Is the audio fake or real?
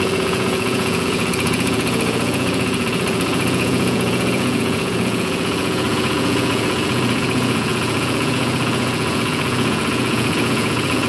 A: fake